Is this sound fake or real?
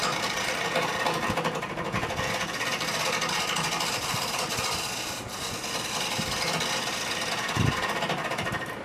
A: real